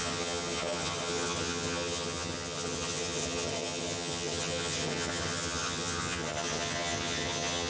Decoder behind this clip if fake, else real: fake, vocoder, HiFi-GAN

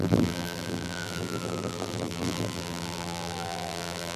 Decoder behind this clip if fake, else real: fake, vocoder, BigVGAN v2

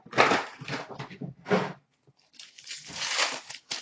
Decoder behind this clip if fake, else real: fake, vocoder, BigVGAN v2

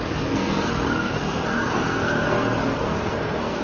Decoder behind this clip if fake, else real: fake, codec, SNAC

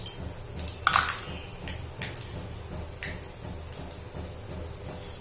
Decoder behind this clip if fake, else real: real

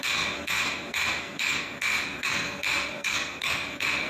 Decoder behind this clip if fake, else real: fake, codec, SNAC